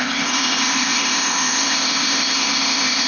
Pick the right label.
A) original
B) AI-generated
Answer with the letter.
B